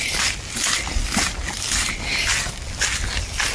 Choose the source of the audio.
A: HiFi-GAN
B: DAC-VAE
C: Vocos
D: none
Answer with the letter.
D